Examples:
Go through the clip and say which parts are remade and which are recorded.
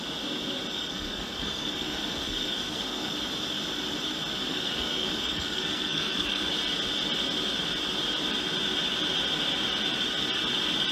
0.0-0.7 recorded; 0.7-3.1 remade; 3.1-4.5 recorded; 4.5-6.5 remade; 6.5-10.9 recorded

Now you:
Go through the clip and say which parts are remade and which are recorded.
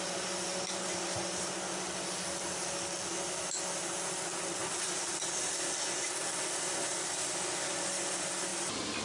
0.0-9.0 recorded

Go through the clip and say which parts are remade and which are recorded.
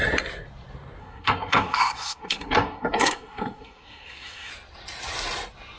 0.0-1.0 recorded; 1.0-4.5 remade; 4.5-5.8 recorded